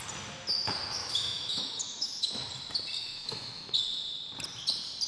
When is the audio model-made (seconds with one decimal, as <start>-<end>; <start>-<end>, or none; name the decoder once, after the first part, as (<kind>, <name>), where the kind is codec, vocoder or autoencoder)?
1.0-2.3 (autoencoder, DAC-VAE); 3.0-3.7